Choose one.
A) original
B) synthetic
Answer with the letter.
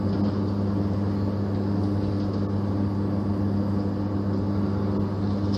A